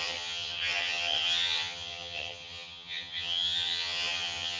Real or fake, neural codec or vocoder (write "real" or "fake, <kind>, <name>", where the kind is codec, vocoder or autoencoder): fake, vocoder, HiFi-GAN